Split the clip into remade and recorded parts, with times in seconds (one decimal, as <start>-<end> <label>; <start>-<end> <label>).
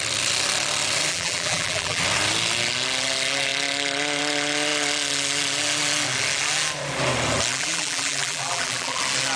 0.0-1.1 recorded; 1.1-2.0 remade; 2.0-7.5 recorded; 7.5-9.0 remade; 9.0-9.4 recorded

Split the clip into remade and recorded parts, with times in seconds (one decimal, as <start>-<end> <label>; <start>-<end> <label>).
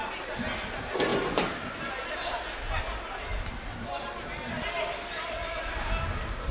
0.0-1.1 recorded; 1.1-1.8 remade; 1.8-6.5 recorded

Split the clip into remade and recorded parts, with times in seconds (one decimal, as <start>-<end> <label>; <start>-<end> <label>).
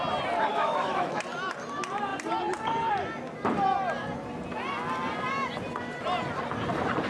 0.0-0.5 recorded; 0.5-1.2 remade; 1.2-7.1 recorded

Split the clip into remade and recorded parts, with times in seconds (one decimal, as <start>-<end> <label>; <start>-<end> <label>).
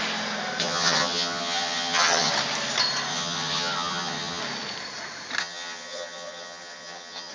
0.0-0.6 recorded; 0.6-2.3 remade; 2.3-3.1 recorded; 3.1-4.4 remade; 4.4-5.4 recorded; 5.4-7.3 remade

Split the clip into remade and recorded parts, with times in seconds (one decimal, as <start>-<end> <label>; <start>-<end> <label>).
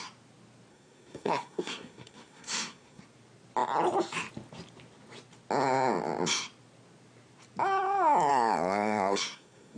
0.0-0.7 recorded; 0.7-3.0 remade; 3.0-8.3 recorded; 8.3-9.8 remade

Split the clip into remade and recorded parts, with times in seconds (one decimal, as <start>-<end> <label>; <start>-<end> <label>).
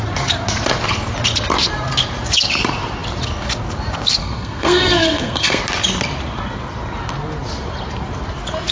0.0-4.2 recorded; 4.2-5.6 remade; 5.6-8.7 recorded